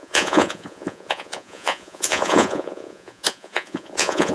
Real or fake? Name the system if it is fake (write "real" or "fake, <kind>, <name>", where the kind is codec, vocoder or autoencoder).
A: fake, vocoder, Vocos